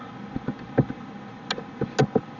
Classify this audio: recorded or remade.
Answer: recorded